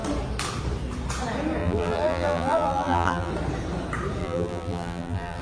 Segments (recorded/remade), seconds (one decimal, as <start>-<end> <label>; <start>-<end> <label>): 0.0-1.6 recorded; 1.6-3.3 remade; 3.3-4.2 recorded; 4.2-5.4 remade